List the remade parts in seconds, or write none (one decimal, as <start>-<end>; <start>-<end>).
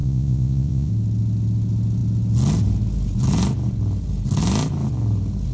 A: 0.0-0.9